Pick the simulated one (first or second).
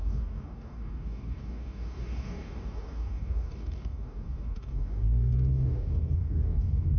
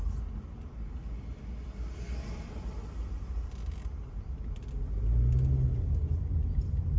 first